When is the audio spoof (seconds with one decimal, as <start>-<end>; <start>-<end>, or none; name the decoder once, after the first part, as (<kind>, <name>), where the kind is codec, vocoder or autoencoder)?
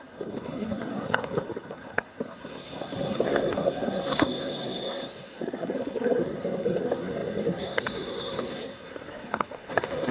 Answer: 0.0-10.1 (codec, SNAC)